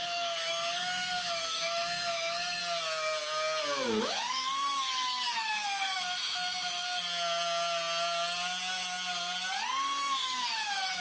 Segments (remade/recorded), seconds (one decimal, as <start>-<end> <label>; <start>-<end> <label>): 0.0-2.6 remade; 2.6-4.0 recorded; 4.0-7.0 remade; 7.0-10.0 recorded; 10.0-11.0 remade